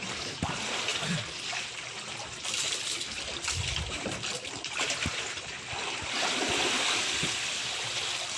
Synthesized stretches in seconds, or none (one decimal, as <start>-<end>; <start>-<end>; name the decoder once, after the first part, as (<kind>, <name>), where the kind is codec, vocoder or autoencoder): none